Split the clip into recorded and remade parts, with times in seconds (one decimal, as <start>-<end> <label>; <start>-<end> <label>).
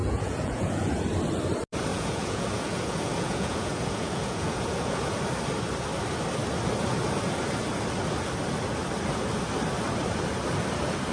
0.0-0.9 remade; 0.9-1.9 recorded; 1.9-5.2 remade; 5.2-11.1 recorded